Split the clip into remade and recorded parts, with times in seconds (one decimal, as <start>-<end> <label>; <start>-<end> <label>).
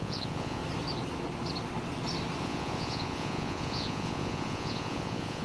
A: 0.0-0.6 remade; 0.6-2.4 recorded; 2.4-5.4 remade